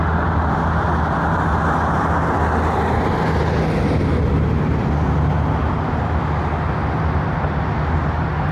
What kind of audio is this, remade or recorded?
recorded